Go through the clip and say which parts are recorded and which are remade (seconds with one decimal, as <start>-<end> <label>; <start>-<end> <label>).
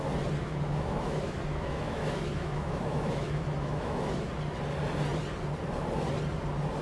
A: 0.0-0.4 recorded; 0.4-4.3 remade; 4.3-6.8 recorded